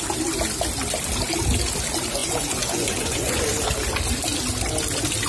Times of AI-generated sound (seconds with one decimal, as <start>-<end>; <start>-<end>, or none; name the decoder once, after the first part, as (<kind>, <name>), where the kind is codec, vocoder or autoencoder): 2.2-3.4 (vocoder, Vocos)